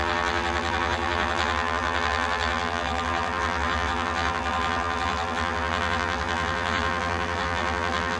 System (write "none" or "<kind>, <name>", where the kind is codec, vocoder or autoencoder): vocoder, BigVGAN v2